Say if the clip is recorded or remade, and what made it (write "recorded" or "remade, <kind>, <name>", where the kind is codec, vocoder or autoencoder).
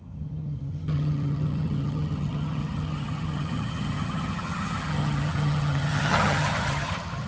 remade, vocoder, HiFi-GAN